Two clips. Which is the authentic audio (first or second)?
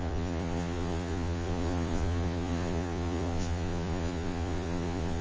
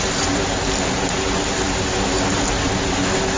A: second